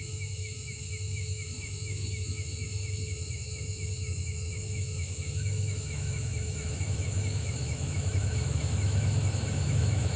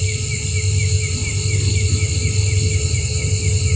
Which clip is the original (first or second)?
second